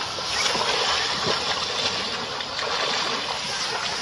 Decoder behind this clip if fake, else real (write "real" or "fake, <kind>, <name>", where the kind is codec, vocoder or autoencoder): real